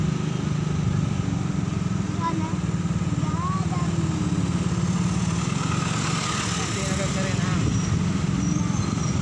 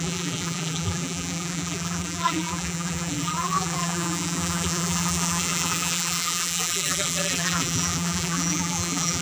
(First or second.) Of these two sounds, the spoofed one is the second